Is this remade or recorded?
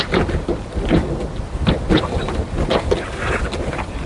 recorded